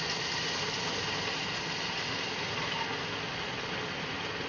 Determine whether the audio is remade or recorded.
recorded